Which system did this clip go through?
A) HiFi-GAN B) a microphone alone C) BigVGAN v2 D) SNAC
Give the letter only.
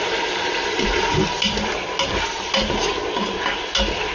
B